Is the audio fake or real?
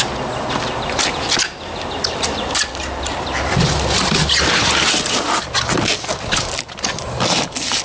real